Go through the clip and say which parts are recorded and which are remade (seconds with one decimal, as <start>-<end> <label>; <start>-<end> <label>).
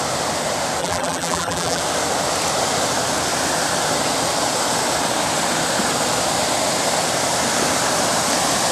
0.0-0.8 recorded; 0.8-1.8 remade; 1.8-8.7 recorded